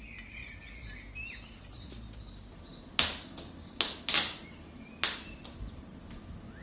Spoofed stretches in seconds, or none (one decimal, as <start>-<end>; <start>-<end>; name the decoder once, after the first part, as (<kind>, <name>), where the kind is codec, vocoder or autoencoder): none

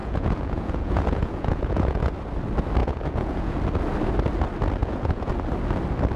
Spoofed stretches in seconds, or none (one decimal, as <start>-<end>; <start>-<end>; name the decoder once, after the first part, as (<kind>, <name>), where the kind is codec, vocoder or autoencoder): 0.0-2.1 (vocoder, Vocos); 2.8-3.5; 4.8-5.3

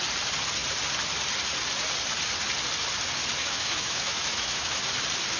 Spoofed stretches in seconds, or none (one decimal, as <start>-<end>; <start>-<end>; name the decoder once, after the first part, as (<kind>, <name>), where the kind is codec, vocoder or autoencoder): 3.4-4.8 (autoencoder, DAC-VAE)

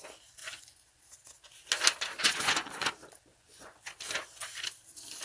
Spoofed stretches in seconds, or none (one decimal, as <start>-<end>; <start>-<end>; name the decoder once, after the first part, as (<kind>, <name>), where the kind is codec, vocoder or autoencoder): 0.4-1.0 (vocoder, Vocos); 2.2-2.9; 3.3-3.9

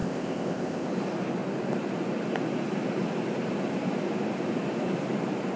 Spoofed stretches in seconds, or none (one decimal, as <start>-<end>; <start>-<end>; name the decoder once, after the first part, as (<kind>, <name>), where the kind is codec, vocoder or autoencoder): 0.0-0.9 (codec, ZipCodec)

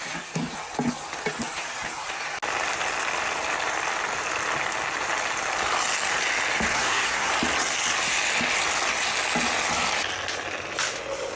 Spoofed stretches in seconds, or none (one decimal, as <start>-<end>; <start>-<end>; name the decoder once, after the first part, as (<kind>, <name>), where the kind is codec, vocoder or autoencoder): 6.7-7.3 (codec, SNAC)